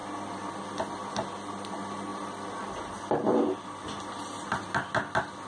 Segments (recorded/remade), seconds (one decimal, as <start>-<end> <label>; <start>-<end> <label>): 0.0-5.5 recorded